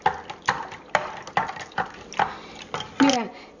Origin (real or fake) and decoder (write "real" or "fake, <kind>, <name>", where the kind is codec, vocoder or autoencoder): real